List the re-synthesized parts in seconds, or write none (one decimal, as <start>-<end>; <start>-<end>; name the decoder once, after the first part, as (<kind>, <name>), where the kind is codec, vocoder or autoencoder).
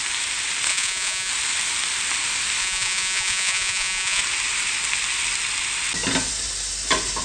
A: 0.7-1.3 (vocoder, Vocos); 2.6-4.2